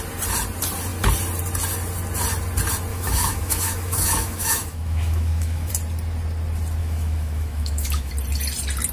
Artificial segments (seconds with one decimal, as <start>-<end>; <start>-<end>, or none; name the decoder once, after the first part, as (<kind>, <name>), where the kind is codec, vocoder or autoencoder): 2.9-5.7 (autoencoder, DAC-VAE); 6.8-8.1

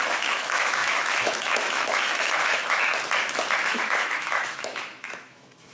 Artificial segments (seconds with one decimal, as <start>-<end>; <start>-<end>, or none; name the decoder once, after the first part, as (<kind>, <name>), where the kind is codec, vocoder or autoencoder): 0.0-2.9 (autoencoder, DAC-VAE); 3.6-5.7

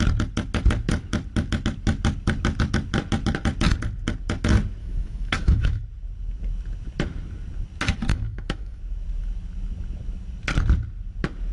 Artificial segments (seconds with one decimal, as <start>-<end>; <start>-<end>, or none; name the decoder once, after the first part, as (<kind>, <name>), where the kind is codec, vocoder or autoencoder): 4.8-5.8 (autoencoder, DAC-VAE); 8.1-8.8

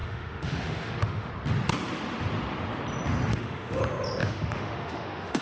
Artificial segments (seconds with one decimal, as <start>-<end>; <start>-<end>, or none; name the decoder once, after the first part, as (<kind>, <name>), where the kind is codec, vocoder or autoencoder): 0.0-1.3 (autoencoder, DAC-VAE); 3.3-3.8; 4.2-5.4

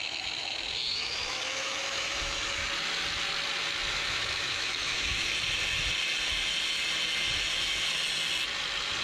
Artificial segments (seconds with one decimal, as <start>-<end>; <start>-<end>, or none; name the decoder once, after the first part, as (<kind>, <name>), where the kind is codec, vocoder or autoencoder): 0.0-2.6 (autoencoder, DAC-VAE); 3.9-5.3